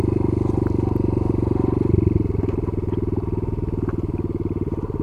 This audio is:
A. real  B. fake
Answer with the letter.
A